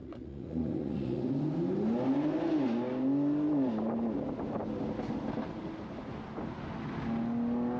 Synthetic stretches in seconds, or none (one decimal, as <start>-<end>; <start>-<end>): 0.0-1.3